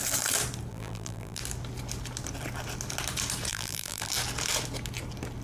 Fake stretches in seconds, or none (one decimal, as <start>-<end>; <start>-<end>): 0.7-1.4; 3.5-4.1